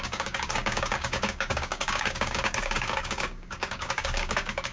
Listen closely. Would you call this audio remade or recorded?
remade